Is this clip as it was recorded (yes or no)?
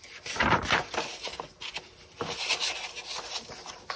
yes